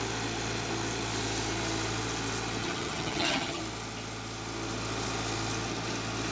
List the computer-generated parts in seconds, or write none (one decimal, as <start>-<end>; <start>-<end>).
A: 2.6-3.6